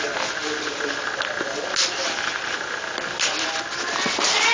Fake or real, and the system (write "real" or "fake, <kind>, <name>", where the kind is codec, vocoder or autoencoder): real